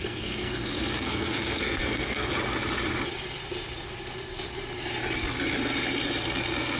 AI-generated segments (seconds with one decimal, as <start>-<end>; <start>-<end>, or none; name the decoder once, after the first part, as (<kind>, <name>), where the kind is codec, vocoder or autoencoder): 0.0-2.3 (codec, SNAC)